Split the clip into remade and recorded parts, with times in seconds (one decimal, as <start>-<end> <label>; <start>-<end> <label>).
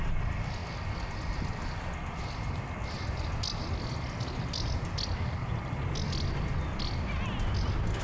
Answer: 0.0-8.0 recorded